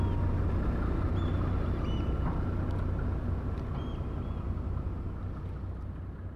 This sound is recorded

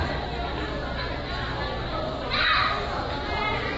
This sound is recorded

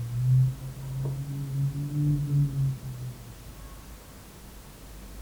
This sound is recorded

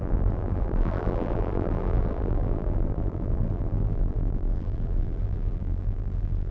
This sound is remade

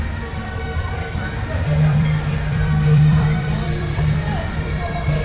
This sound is remade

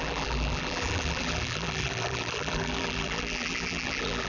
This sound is remade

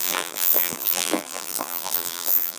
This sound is remade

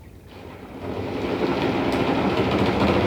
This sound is recorded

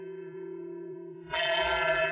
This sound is remade